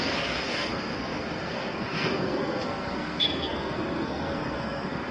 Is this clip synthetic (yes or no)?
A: yes